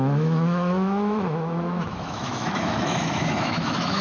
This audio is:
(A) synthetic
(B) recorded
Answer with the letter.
A